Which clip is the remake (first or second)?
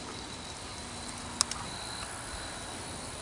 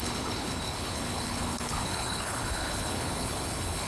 second